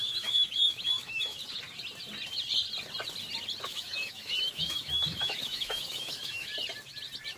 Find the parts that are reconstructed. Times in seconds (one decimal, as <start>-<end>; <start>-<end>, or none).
0.0-1.4; 3.6-6.5